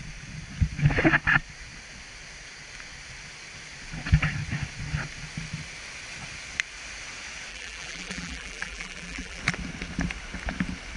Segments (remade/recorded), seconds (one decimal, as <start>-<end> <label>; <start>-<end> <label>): 0.0-7.5 recorded; 7.5-9.4 remade; 9.4-11.0 recorded